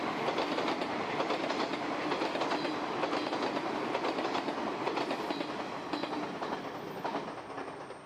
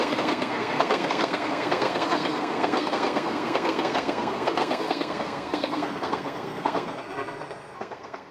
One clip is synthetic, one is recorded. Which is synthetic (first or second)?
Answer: second